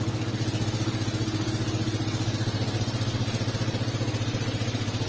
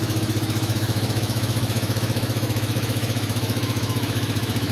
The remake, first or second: second